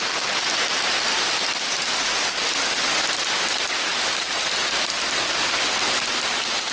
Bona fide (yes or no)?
yes